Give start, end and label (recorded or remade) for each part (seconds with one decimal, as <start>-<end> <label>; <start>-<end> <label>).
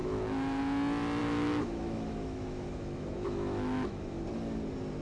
0.0-0.6 remade; 0.6-1.2 recorded; 1.2-4.2 remade; 4.2-5.0 recorded